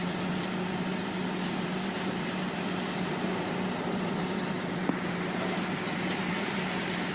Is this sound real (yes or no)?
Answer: no